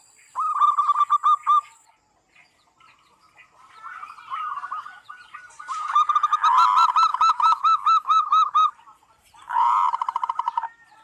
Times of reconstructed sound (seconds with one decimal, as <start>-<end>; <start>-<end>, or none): 7.1-8.7